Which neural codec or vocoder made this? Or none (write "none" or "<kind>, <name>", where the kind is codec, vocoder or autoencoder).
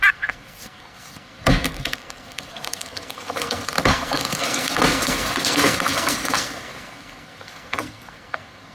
codec, SNAC